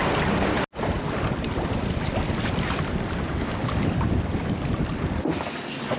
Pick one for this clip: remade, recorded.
recorded